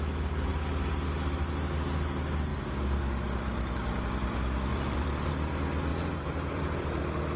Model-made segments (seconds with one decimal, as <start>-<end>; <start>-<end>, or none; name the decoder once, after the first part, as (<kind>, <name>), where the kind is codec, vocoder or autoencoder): 2.5-3.0 (vocoder, BigVGAN v2); 4.7-5.3; 5.9-7.0

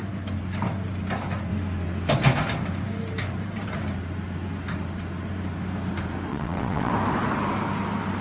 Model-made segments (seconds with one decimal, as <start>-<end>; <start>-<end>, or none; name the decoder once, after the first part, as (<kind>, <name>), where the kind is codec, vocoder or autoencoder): 6.3-6.9 (vocoder, WaveNeXt)

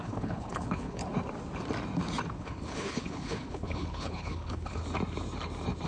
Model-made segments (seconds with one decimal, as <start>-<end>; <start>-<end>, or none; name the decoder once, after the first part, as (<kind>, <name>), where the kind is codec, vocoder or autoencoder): 0.0-1.0 (codec, HILCodec); 2.4-4.8

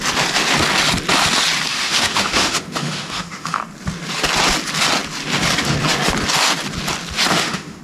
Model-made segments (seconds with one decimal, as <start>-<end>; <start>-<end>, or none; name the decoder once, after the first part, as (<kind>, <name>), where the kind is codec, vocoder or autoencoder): 1.7-3.6 (autoencoder, DAC-VAE); 7.3-7.8

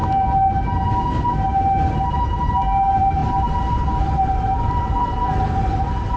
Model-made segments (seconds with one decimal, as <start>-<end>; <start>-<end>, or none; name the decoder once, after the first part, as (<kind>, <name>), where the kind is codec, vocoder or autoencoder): none

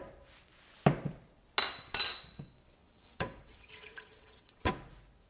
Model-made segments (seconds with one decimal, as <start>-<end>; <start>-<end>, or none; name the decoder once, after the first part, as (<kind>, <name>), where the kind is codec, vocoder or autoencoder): 2.8-4.7 (vocoder, WaveNeXt)

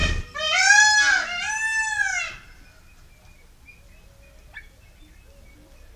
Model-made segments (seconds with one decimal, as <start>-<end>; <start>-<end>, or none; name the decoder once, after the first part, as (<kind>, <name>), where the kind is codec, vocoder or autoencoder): none

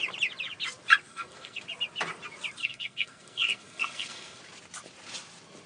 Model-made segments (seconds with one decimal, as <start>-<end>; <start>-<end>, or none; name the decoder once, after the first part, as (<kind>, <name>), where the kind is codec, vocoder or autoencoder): 1.1-1.6 (codec, SNAC); 2.6-4.4